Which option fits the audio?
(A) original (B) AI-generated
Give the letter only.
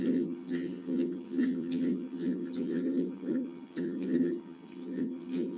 B